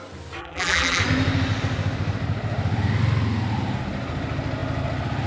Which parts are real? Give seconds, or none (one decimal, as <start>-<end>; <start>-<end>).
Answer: 0.0-0.4; 1.0-5.3